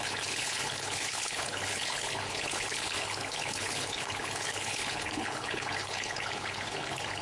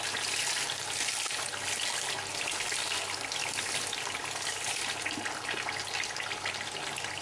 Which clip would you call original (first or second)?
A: second